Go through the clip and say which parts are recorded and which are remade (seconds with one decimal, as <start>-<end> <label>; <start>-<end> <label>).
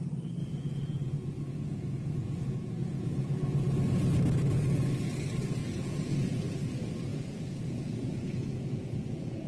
0.0-0.4 recorded; 0.4-4.9 remade; 4.9-5.6 recorded; 5.6-6.4 remade; 6.4-7.1 recorded; 7.1-9.5 remade